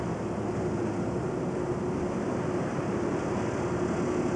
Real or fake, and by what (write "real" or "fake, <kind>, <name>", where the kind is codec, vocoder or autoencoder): real